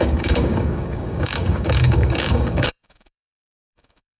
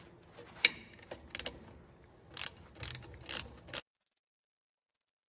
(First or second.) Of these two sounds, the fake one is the first